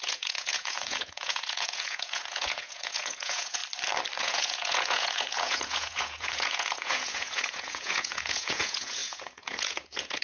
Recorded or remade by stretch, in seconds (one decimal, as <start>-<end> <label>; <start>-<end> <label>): 0.0-3.6 remade; 3.6-4.2 recorded; 4.2-10.2 remade